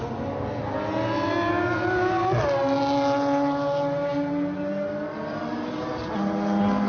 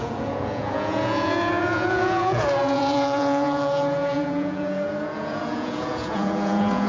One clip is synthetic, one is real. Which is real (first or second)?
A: first